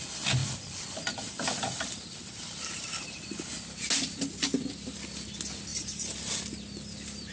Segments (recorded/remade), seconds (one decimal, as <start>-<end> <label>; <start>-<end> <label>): 0.0-0.4 recorded; 0.4-3.5 remade; 3.5-5.7 recorded; 5.7-7.3 remade